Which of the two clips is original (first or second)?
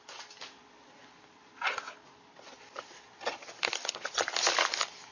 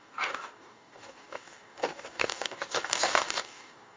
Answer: first